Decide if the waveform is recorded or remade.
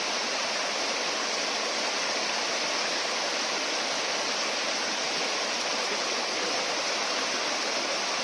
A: recorded